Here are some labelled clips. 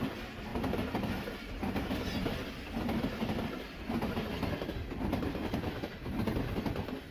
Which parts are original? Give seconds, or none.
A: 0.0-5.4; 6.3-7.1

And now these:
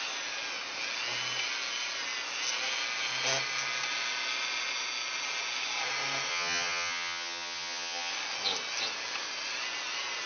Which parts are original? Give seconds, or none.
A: 0.0-6.3; 8.1-10.3

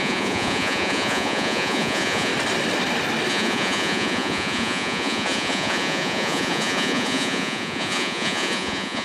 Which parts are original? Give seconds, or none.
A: 2.3-3.3

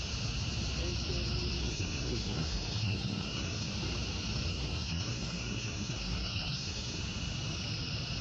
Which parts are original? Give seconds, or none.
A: 0.0-1.6; 3.7-4.5; 7.0-8.2

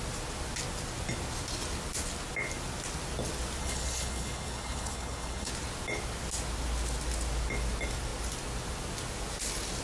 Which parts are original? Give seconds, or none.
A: 0.0-3.6; 5.5-9.8

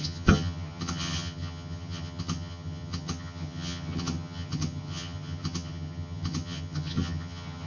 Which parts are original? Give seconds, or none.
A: none